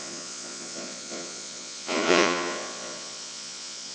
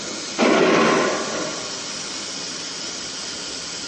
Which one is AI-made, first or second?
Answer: first